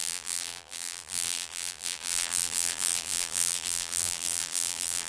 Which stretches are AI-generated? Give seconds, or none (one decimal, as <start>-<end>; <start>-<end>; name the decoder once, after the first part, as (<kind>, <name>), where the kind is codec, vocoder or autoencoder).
0.0-5.1 (vocoder, BigVGAN v2)